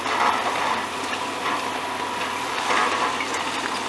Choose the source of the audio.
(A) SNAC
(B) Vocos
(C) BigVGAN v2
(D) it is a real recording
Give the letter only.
D